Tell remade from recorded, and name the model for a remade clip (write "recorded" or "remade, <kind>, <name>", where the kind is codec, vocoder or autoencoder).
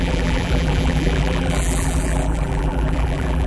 remade, vocoder, BigVGAN v2